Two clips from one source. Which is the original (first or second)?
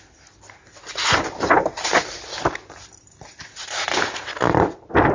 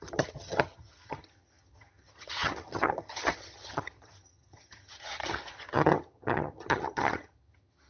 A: first